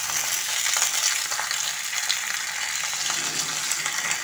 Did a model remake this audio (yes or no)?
no